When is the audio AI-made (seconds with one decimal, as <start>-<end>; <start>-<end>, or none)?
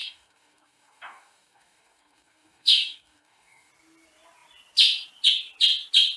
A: 0.0-3.7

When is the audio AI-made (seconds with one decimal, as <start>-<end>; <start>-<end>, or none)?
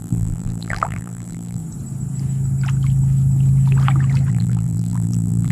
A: 0.0-1.6; 4.3-5.5